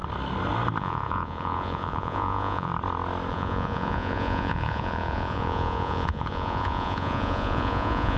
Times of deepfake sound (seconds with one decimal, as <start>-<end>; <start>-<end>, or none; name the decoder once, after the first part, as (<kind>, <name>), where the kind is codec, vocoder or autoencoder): 0.8-2.7 (vocoder, Vocos); 3.3-8.2